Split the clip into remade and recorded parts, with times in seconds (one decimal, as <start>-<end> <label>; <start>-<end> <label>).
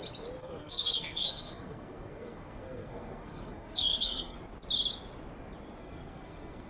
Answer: 0.0-0.4 recorded; 0.4-4.4 remade; 4.4-5.8 recorded; 5.8-6.7 remade